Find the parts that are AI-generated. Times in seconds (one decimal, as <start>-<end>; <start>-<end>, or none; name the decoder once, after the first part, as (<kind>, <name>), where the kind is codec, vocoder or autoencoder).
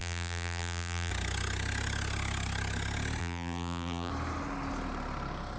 0.0-1.1 (vocoder, BigVGAN v2); 3.2-4.1